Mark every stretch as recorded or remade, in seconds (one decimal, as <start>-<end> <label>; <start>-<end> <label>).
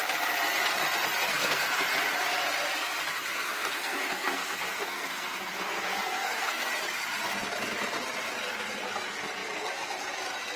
0.0-1.3 recorded; 1.3-1.8 remade; 1.8-3.3 recorded; 3.3-6.7 remade; 6.7-10.6 recorded